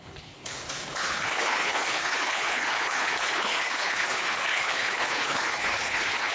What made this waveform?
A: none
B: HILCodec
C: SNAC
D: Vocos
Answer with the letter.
B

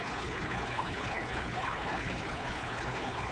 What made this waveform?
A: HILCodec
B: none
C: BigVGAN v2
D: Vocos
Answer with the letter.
A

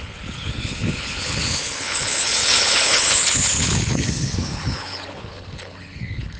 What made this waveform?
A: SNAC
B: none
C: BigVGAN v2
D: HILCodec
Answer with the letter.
D